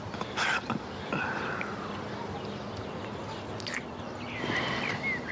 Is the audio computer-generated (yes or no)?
no